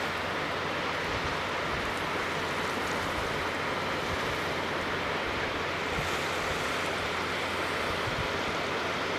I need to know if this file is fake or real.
real